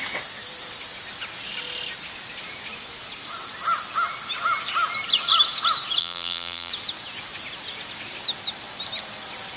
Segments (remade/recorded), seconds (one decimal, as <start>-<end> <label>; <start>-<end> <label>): 0.0-6.0 recorded; 6.0-6.7 remade; 6.7-9.6 recorded